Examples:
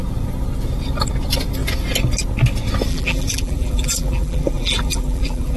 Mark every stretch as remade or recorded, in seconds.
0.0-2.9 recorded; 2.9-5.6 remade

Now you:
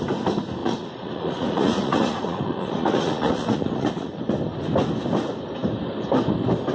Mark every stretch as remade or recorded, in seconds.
0.0-0.6 recorded; 0.6-4.2 remade; 4.2-6.7 recorded

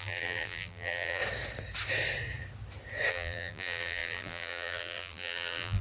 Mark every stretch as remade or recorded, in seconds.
0.0-1.2 remade; 1.2-3.1 recorded; 3.1-5.8 remade

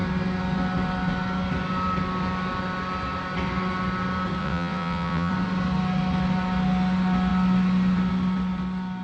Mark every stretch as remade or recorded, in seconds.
0.0-4.4 recorded; 4.4-5.3 remade; 5.3-9.0 recorded

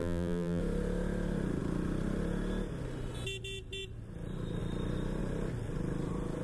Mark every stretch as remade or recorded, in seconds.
0.0-0.6 remade; 0.6-6.4 recorded